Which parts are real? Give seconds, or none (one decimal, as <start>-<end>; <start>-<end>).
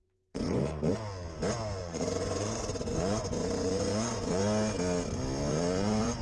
0.9-1.8; 4.4-5.5